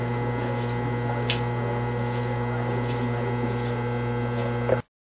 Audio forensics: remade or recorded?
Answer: recorded